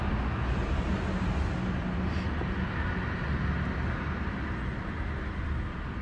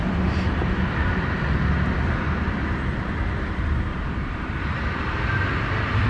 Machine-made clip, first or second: second